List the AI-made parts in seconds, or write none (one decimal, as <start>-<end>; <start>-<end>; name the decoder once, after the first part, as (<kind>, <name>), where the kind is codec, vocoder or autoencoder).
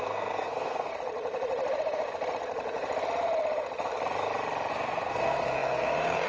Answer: 0.0-0.9 (codec, SNAC); 4.7-6.3